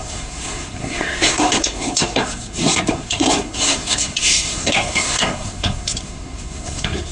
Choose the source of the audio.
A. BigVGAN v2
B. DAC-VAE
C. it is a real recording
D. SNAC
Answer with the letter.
D